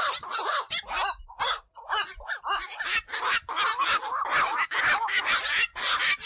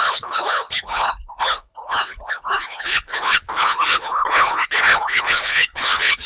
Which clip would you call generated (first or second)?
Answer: second